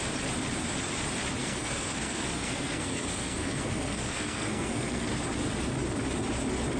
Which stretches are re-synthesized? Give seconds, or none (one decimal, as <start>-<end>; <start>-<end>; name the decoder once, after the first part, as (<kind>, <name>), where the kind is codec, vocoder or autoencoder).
1.4-5.1 (codec, SNAC)